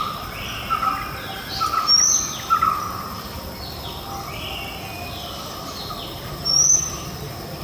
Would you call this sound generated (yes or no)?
no